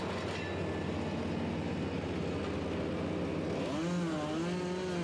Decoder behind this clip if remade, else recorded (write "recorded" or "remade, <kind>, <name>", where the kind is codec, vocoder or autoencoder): recorded